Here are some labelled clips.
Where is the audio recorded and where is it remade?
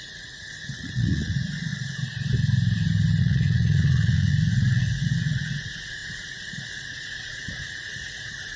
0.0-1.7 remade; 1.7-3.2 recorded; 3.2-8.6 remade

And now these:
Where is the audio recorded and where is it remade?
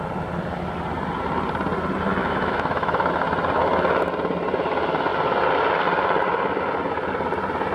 0.0-2.2 recorded; 2.2-3.1 remade; 3.1-7.7 recorded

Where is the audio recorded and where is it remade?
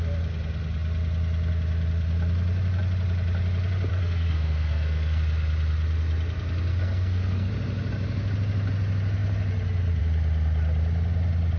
0.0-3.9 recorded; 3.9-5.2 remade; 5.2-6.7 recorded; 6.7-7.5 remade; 7.5-11.6 recorded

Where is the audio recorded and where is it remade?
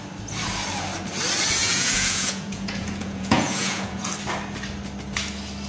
0.0-1.6 recorded; 1.6-4.1 remade; 4.1-5.7 recorded